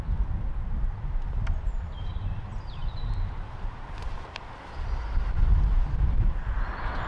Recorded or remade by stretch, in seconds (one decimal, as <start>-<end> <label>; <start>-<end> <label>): 0.0-1.7 recorded; 1.7-2.4 remade; 2.4-2.8 recorded; 2.8-4.4 remade; 4.4-7.1 recorded